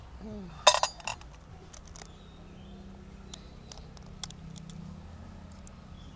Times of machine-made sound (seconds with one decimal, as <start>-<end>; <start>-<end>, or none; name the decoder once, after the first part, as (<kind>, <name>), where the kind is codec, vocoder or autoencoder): none